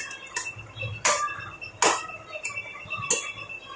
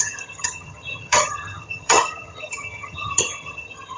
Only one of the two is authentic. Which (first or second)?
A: first